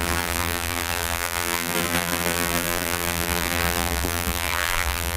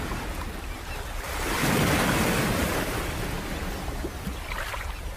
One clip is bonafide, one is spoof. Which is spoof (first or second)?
first